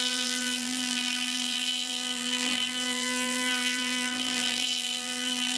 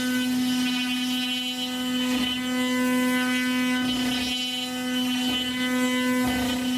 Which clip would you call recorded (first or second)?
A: second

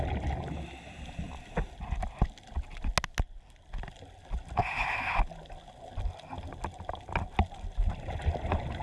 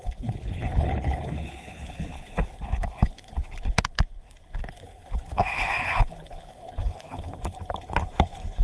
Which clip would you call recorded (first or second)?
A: first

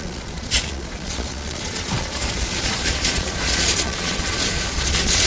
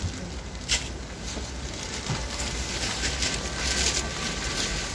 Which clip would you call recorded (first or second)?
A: second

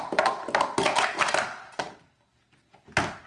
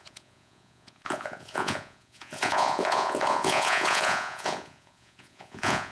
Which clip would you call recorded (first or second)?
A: first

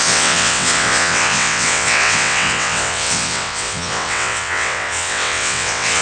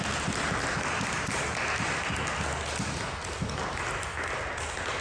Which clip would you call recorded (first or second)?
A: second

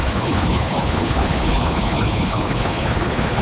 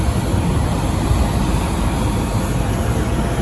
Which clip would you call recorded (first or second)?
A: second